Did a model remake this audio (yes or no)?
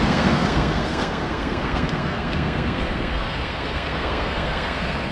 yes